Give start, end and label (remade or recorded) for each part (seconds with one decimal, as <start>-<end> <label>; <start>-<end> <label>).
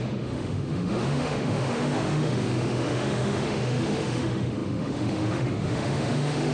0.0-6.5 remade